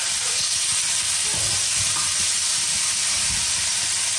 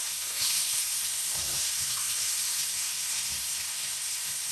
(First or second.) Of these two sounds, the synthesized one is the second